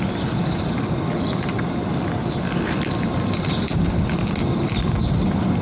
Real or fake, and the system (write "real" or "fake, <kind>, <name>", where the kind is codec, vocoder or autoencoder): real